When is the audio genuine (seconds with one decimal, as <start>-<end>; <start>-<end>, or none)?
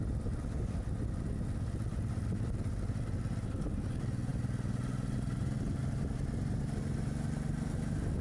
0.0-8.2